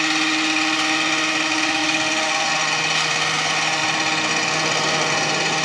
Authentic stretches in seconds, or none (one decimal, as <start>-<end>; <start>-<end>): 0.0-5.6